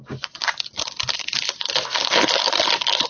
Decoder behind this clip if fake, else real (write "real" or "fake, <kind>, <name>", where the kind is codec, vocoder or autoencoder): real